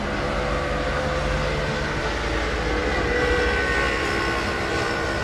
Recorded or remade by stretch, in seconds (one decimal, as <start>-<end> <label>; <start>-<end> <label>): 0.0-5.2 recorded